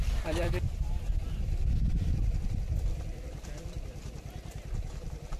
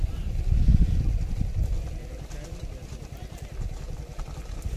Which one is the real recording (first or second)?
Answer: second